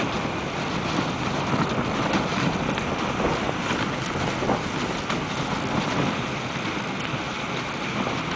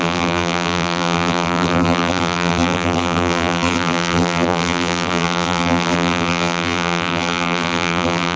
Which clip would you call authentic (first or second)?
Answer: first